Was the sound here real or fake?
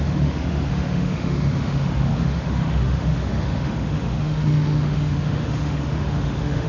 fake